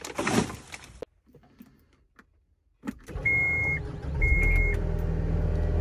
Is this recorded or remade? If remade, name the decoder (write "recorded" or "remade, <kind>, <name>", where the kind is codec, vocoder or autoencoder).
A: recorded